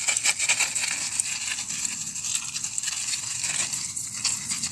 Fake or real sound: real